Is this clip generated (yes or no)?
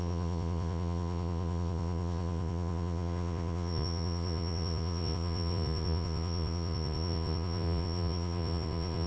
yes